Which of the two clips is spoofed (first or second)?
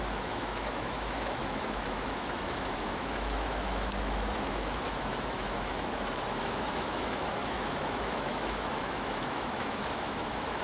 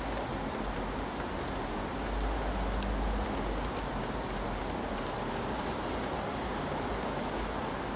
first